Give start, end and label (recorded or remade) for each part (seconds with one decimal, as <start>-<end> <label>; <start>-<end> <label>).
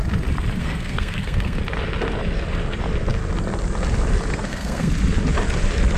0.0-0.6 recorded; 0.6-1.6 remade; 1.6-4.3 recorded; 4.3-4.9 remade; 4.9-6.0 recorded